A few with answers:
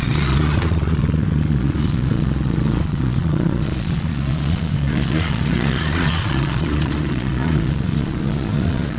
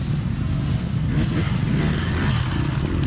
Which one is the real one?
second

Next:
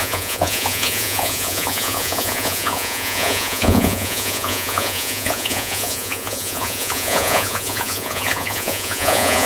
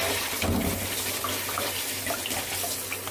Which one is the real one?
second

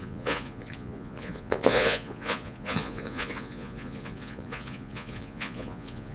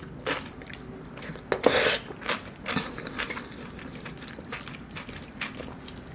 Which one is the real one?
second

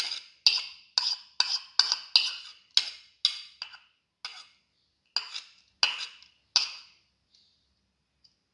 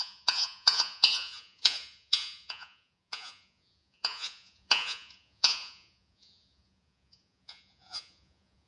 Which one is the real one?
first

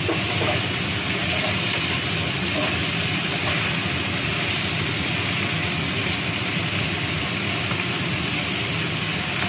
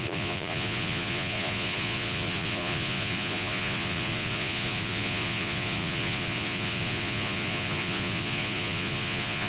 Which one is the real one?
first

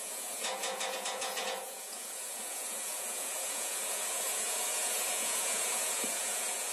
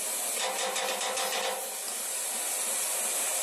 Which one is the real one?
second